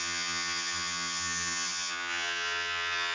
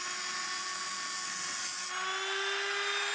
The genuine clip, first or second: second